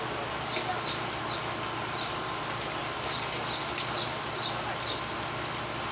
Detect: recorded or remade recorded